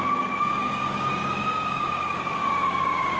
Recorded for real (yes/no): no